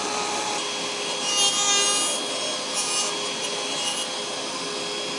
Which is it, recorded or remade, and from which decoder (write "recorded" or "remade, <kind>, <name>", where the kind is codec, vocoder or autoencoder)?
recorded